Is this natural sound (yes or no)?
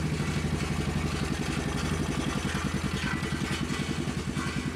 yes